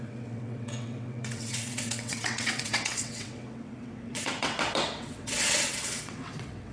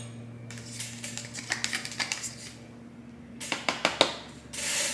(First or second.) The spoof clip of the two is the first